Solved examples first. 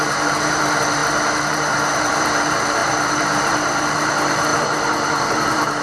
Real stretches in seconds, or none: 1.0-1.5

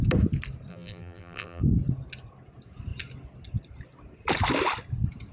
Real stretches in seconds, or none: 0.0-0.7; 1.6-5.3

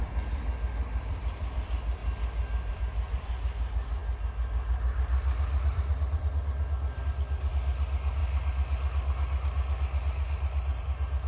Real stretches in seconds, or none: 2.0-2.7; 8.2-10.8

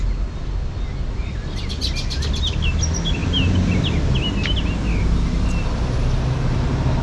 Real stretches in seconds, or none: 0.0-7.0

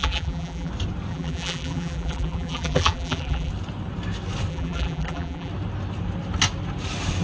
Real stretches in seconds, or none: 0.7-1.1; 3.5-4.5; 5.5-7.2